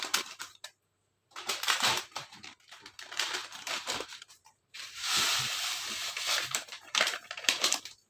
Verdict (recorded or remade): remade